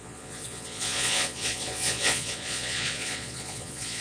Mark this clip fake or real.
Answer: fake